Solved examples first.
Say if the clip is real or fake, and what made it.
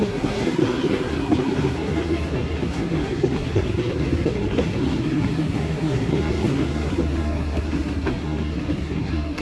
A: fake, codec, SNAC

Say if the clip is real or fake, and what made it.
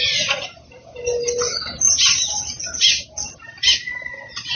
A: real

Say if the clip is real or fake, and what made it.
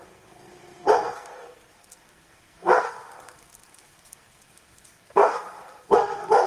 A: fake, codec, SNAC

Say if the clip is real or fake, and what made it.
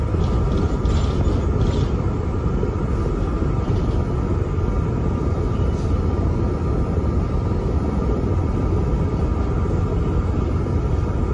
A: real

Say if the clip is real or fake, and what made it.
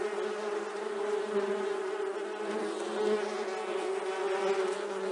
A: real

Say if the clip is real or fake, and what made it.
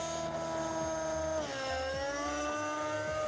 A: real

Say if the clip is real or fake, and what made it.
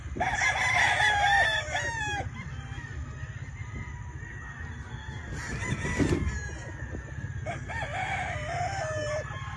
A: real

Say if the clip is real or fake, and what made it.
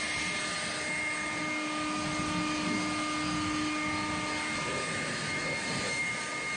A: real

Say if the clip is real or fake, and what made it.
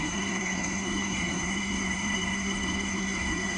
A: fake, codec, SNAC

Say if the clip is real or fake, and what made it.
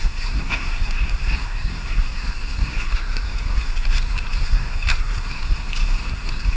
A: fake, codec, SNAC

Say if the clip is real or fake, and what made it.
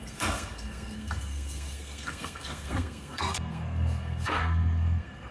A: fake, codec, SNAC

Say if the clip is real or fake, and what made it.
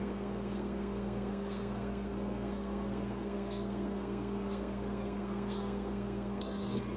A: fake, codec, SNAC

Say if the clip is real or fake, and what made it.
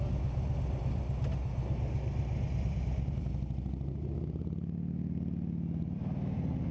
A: real